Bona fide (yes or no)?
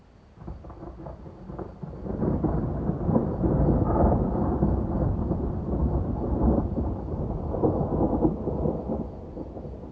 yes